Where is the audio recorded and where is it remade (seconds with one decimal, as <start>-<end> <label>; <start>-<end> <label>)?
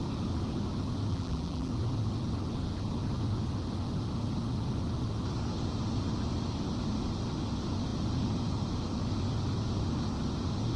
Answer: 0.0-1.1 recorded; 1.1-1.7 remade; 1.7-10.8 recorded